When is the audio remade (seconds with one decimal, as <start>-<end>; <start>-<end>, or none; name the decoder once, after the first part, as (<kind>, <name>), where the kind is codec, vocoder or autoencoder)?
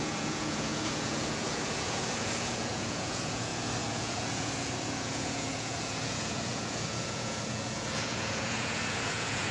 0.0-9.5 (vocoder, Vocos)